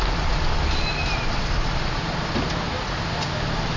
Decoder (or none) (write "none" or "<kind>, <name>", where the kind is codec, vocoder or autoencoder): none